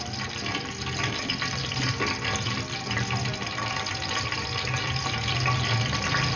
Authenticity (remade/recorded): recorded